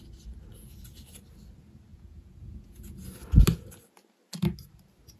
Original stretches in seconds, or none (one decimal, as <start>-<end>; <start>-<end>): 0.0-1.9; 3.0-5.2